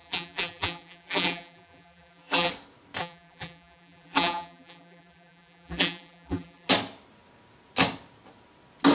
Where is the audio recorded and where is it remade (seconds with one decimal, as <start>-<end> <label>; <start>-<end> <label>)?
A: 0.0-2.5 remade; 2.5-3.0 recorded; 3.0-6.7 remade; 6.7-8.9 recorded